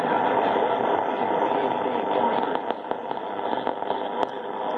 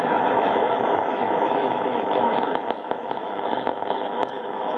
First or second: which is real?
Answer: first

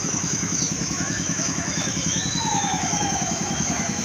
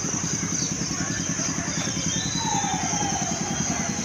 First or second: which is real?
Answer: second